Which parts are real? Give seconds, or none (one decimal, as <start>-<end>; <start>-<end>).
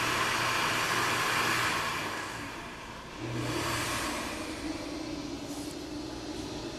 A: 0.0-2.0; 2.5-6.8